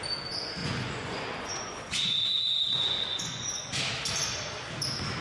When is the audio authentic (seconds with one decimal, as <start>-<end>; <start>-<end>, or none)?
0.0-0.6; 3.7-5.2